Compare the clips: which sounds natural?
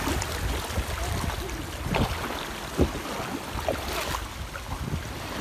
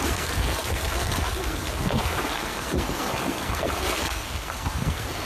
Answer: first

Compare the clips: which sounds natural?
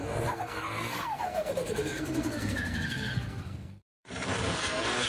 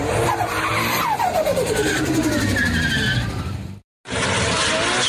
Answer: second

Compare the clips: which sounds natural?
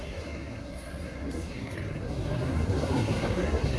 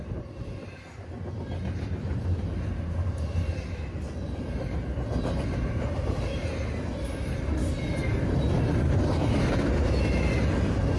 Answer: second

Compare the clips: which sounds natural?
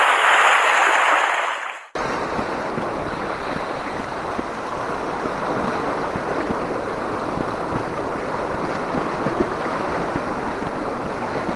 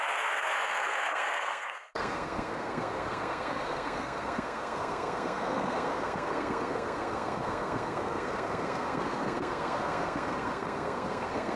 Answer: first